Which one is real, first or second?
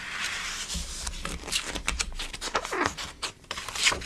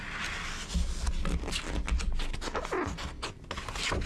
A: second